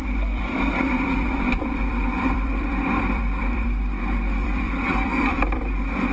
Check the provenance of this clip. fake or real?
fake